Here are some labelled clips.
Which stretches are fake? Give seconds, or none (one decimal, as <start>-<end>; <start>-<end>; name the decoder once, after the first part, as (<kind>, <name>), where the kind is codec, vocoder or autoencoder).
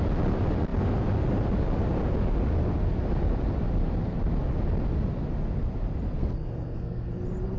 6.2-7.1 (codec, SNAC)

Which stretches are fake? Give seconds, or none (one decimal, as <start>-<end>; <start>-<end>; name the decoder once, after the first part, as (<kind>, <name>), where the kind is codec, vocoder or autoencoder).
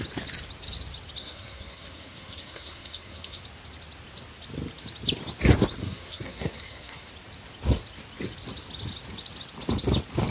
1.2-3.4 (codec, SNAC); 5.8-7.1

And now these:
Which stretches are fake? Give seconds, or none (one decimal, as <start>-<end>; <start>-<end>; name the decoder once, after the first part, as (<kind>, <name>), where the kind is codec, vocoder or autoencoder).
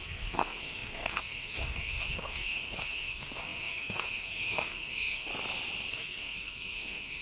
0.0-5.3 (codec, SNAC); 5.9-7.2